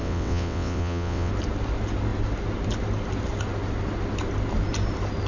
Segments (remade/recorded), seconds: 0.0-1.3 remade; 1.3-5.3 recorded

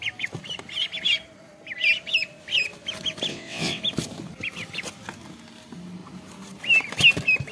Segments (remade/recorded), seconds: 0.0-3.3 recorded; 3.3-3.8 remade; 3.8-7.5 recorded

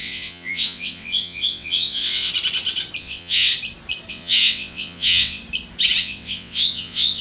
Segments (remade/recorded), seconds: 0.0-2.3 remade; 2.3-3.0 recorded; 3.0-3.5 remade; 3.5-4.1 recorded; 4.1-5.4 remade; 5.4-6.0 recorded; 6.0-7.2 remade

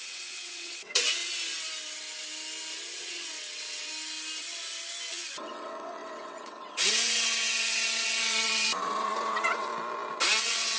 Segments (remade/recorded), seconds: 0.0-1.2 remade; 1.2-3.0 recorded; 3.0-3.9 remade; 3.9-5.1 recorded; 5.1-9.7 remade; 9.7-10.4 recorded; 10.4-10.8 remade

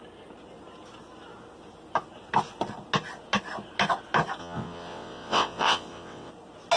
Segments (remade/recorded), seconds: 0.0-4.4 recorded; 4.4-6.3 remade; 6.3-6.8 recorded

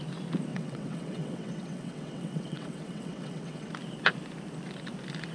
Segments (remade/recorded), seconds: 0.0-0.5 recorded; 0.5-3.7 remade; 3.7-5.3 recorded